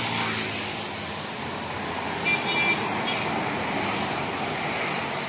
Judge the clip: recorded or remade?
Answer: recorded